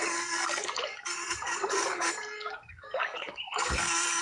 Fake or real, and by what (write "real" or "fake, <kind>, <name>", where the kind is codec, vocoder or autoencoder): fake, codec, DAC